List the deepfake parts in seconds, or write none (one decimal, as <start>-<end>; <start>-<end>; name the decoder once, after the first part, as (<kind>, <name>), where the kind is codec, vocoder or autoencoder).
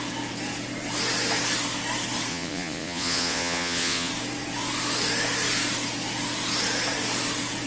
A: 2.3-4.1 (vocoder, Vocos)